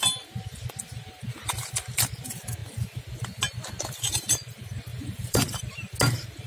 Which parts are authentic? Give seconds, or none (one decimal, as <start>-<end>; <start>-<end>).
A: 0.0-4.9; 5.6-6.5